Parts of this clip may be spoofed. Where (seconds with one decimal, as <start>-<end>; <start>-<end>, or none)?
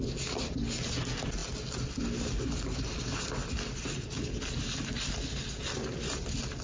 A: none